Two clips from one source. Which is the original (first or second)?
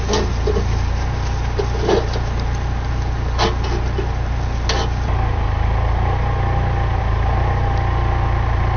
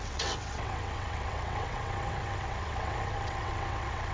first